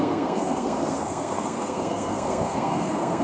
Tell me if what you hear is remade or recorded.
remade